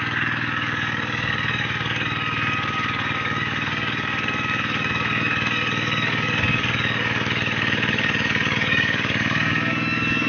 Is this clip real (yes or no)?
no